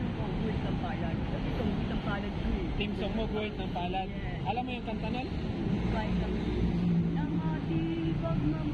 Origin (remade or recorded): recorded